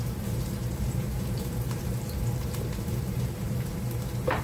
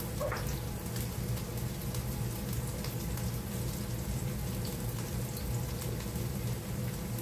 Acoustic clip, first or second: second